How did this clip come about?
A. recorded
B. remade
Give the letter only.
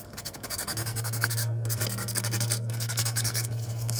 B